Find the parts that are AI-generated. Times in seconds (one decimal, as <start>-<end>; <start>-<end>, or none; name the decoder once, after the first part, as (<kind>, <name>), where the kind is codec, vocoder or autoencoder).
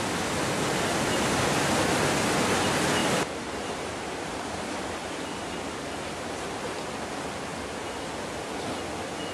3.0-6.9 (vocoder, BigVGAN v2)